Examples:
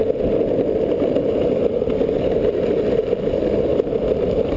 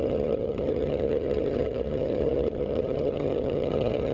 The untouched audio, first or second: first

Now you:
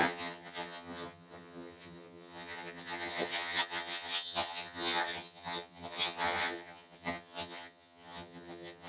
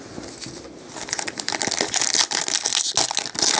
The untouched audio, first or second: second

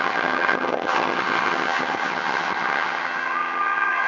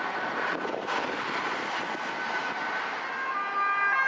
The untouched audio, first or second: second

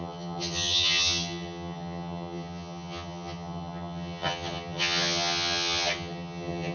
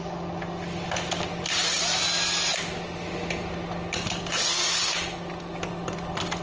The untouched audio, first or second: second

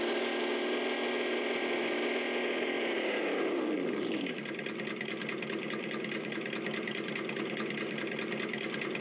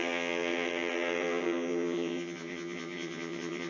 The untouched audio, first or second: first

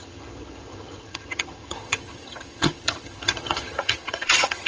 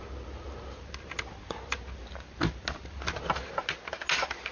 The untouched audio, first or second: second